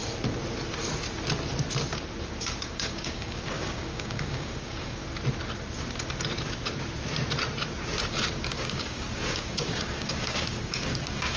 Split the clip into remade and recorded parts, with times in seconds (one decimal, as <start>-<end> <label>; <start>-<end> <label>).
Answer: 0.0-2.6 recorded; 2.6-5.0 remade; 5.0-8.1 recorded; 8.1-11.4 remade